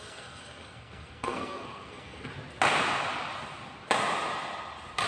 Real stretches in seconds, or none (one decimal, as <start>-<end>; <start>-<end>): 2.3-5.1